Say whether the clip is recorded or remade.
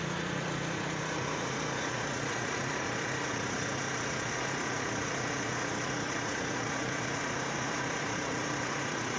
remade